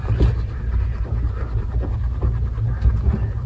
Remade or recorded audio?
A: recorded